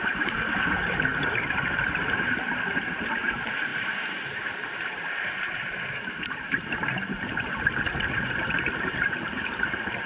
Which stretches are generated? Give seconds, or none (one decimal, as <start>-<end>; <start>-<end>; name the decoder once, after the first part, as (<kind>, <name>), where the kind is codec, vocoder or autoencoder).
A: 0.0-10.1 (vocoder, BigVGAN v2)